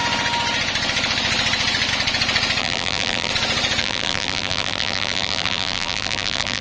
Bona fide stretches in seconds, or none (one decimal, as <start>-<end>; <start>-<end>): 0.0-2.6; 3.3-3.8

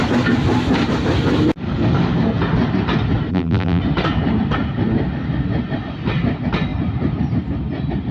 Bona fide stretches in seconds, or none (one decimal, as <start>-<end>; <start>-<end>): 0.0-3.3; 3.8-8.1

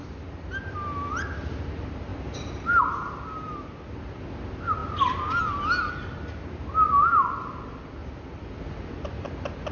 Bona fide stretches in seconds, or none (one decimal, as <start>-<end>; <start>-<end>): 0.0-8.0

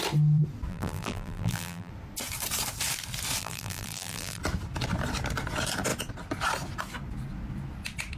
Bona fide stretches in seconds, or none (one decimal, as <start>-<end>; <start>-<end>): 0.0-0.7; 1.9-3.4; 4.4-8.2

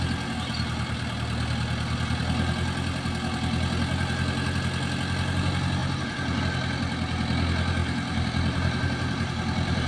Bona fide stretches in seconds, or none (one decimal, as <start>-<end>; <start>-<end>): 0.0-5.8; 6.4-7.8

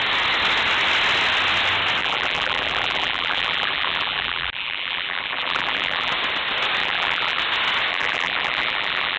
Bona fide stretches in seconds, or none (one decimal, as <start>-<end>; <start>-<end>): 0.0-2.0; 6.1-6.8; 7.4-7.9